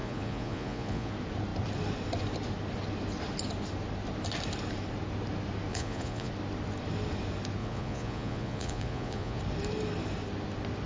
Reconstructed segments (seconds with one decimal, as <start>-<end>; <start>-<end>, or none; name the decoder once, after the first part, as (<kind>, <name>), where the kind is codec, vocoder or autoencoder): 0.0-1.1 (vocoder, Vocos); 5.7-6.3; 7.6-9.4

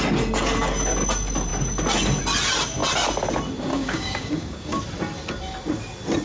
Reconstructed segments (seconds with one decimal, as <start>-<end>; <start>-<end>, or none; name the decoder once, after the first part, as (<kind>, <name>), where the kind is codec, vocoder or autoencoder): 3.7-4.8 (codec, DAC)

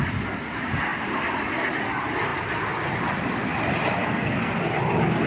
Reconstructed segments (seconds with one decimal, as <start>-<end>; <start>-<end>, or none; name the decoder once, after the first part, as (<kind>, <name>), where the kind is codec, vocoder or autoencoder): 4.0-4.5 (codec, SNAC)

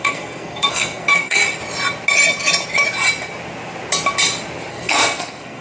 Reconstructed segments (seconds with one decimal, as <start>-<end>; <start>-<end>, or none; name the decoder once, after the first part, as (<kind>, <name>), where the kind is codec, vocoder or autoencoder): 0.0-1.4 (codec, SNAC); 4.7-5.6

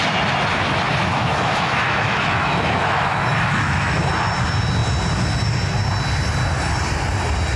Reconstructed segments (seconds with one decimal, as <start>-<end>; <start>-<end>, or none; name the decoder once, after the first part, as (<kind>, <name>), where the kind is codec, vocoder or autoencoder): 1.0-4.0 (autoencoder, DAC-VAE)

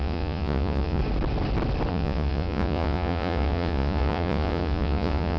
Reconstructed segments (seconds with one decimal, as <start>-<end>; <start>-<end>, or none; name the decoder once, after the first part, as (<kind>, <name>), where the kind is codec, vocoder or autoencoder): 0.0-1.0 (vocoder, Vocos); 1.9-5.4

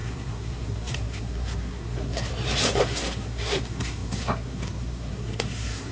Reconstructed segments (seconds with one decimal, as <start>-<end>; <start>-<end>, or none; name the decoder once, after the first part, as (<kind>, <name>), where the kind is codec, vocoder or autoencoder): 0.0-2.3 (codec, SNAC); 2.8-5.9

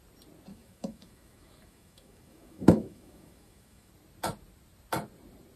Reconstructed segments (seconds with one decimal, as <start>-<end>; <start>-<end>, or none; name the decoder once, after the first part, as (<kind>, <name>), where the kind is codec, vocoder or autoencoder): 0.5-3.9 (autoencoder, DAC-VAE)